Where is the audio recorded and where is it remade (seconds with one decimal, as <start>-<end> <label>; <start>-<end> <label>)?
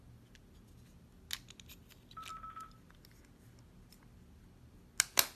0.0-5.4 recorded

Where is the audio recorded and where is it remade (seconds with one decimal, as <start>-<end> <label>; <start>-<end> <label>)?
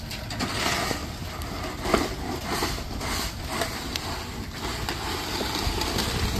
0.0-1.0 recorded; 1.0-3.0 remade; 3.0-6.4 recorded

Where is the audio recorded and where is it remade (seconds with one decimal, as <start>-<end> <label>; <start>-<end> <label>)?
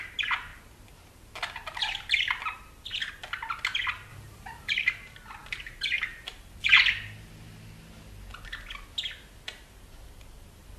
0.0-4.1 recorded; 4.1-4.7 remade; 4.7-5.4 recorded; 5.4-6.8 remade; 6.8-10.8 recorded